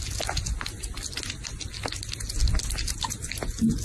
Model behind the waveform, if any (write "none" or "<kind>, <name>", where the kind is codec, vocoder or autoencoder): none